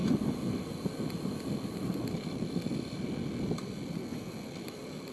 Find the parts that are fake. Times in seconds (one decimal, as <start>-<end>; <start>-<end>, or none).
none